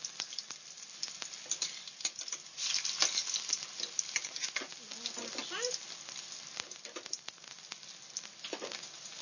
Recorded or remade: recorded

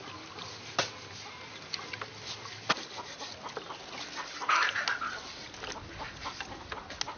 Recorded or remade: recorded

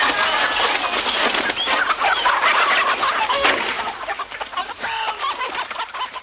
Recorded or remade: recorded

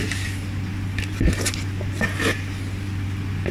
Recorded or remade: recorded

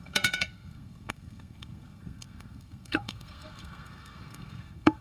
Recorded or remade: remade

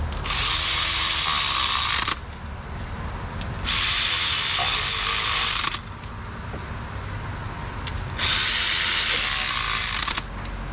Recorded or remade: recorded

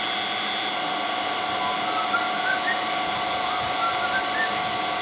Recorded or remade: recorded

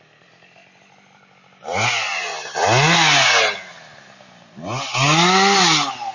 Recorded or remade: recorded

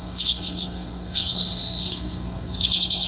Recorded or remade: remade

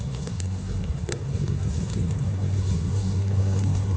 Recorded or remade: remade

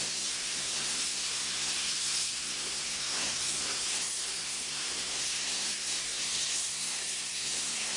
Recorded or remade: remade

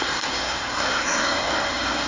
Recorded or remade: remade